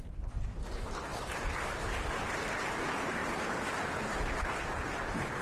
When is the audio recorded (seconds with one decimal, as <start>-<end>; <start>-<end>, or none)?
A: 0.0-5.4